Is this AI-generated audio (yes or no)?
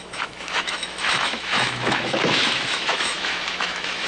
yes